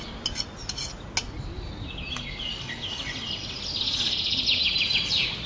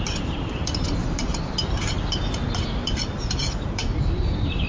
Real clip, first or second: first